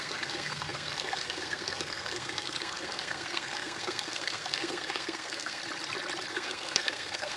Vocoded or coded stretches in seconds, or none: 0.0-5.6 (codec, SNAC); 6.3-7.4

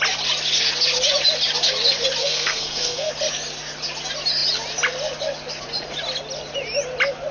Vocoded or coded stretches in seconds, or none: 2.2-3.1 (codec, SNAC)

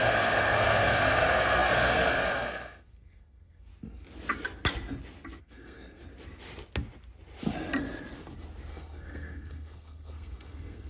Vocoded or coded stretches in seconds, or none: 0.0-3.7 (codec, SNAC); 5.4-6.0; 8.7-10.9

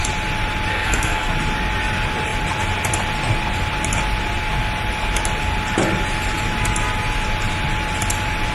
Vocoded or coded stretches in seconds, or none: 0.7-1.3 (codec, SNAC)

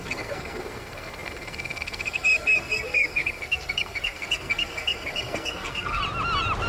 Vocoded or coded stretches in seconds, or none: 0.0-6.0 (codec, SNAC)

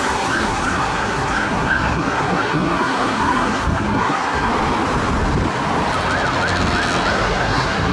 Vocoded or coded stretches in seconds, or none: 0.0-4.5 (codec, SNAC); 7.1-7.9

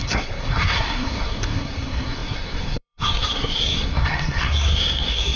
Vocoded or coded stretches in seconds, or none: 0.0-5.4 (codec, SNAC)